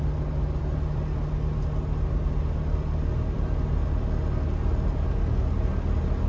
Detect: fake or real real